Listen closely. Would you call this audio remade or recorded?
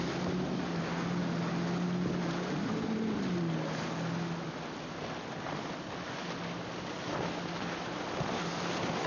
recorded